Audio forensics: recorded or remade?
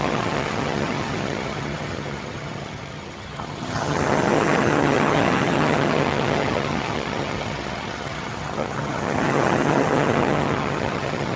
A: remade